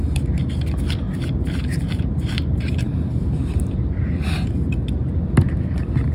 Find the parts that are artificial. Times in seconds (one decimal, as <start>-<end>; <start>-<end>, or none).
1.0-4.7